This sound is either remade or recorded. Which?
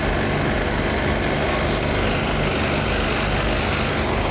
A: recorded